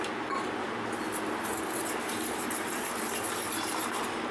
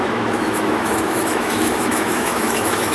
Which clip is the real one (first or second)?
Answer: first